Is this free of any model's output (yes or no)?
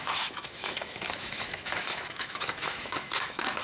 no